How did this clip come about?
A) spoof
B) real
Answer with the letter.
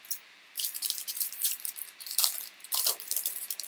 A